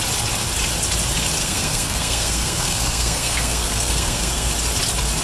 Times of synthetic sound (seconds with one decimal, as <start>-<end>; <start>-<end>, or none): 1.4-4.5